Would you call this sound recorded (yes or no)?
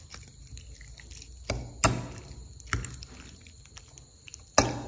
yes